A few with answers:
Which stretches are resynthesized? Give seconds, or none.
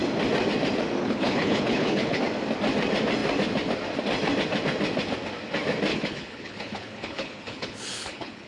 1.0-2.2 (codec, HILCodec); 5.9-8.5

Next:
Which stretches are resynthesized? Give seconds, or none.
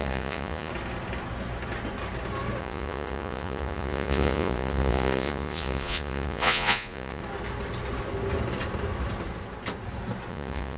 0.0-0.7 (vocoder, Vocos); 2.6-7.2; 10.3-10.8